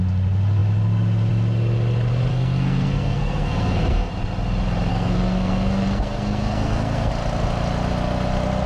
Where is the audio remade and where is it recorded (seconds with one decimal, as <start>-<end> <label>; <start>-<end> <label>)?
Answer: 0.0-2.3 recorded; 2.3-4.1 remade; 4.1-4.9 recorded; 4.9-7.1 remade; 7.1-8.7 recorded